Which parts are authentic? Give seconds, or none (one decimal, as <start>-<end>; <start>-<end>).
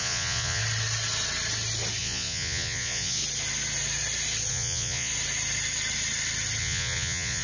0.6-2.0; 3.2-4.5; 5.1-6.6